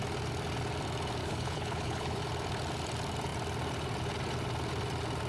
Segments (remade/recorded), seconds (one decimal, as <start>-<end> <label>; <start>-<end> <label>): 0.0-1.2 recorded; 1.2-2.2 remade; 2.2-5.3 recorded